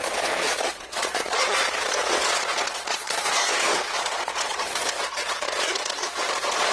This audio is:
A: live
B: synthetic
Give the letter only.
B